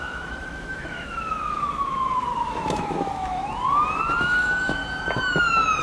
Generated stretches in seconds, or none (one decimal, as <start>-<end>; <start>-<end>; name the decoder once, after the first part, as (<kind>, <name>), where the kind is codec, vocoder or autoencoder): 0.0-3.4 (autoencoder, DAC-VAE); 4.2-4.8